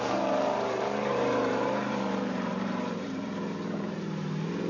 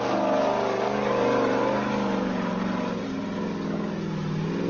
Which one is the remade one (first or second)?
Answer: first